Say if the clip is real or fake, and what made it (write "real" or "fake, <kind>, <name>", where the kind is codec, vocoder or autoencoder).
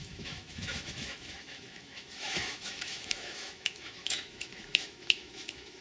fake, autoencoder, DAC-VAE